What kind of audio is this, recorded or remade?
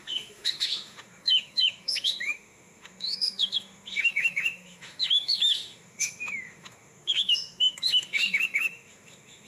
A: remade